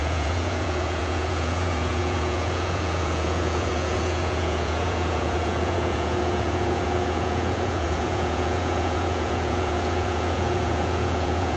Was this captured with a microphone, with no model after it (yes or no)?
no